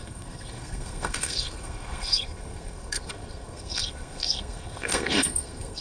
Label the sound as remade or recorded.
remade